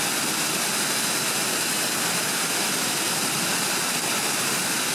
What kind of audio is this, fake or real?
real